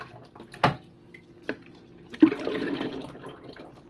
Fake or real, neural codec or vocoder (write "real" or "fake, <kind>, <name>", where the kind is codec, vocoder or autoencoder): real